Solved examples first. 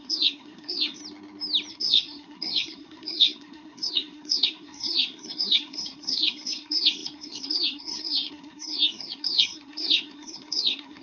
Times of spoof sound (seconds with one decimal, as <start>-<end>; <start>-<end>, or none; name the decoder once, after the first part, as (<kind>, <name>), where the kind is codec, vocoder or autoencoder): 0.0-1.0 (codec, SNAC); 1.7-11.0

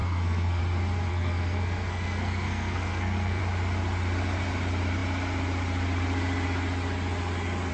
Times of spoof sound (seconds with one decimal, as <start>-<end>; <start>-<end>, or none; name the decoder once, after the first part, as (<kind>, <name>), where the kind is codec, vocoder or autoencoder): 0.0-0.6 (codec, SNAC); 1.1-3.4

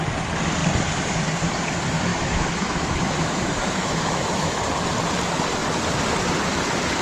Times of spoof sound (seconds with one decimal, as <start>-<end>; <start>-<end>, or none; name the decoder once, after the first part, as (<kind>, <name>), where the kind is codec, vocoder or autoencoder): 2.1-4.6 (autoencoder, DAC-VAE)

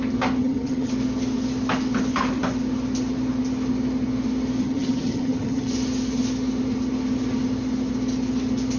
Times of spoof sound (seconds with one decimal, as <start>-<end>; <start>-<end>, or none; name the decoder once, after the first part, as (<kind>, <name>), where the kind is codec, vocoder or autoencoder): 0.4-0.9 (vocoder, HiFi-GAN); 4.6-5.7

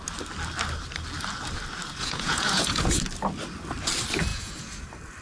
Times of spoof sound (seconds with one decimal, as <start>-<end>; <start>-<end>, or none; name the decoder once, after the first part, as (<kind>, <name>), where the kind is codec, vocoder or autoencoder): 2.0-3.0 (vocoder, Vocos); 4.3-4.8

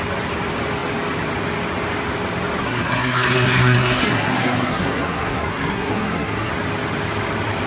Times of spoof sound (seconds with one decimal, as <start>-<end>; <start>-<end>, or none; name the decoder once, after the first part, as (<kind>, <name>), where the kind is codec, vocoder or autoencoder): 2.6-6.5 (codec, SNAC)